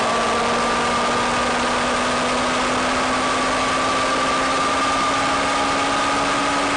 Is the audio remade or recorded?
recorded